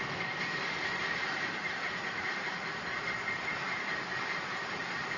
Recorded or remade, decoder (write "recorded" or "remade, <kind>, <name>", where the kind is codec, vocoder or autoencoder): recorded